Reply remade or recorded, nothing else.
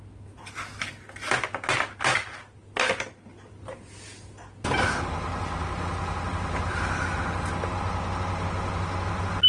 recorded